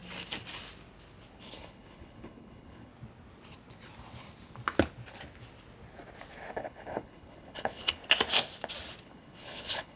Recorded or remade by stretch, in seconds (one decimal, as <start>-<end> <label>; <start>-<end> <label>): 0.0-1.4 recorded; 1.4-2.9 remade; 2.9-6.5 recorded; 6.5-8.0 remade; 8.0-9.0 recorded; 9.0-10.0 remade